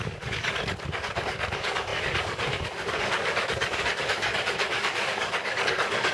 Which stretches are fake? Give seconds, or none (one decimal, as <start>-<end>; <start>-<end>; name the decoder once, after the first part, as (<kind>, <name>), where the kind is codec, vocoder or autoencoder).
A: 0.0-6.1 (codec, DAC)